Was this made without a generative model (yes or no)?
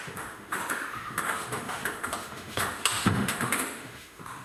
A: no